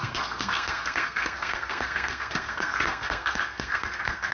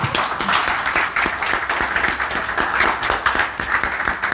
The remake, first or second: first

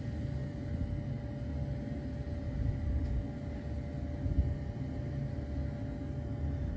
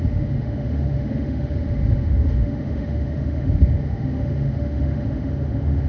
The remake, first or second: second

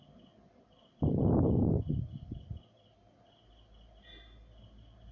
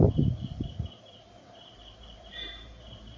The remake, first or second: second